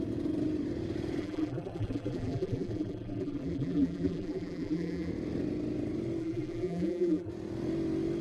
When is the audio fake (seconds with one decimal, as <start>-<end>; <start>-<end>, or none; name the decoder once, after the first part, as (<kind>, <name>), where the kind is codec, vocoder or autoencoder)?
1.2-5.1 (vocoder, BigVGAN v2); 6.2-7.3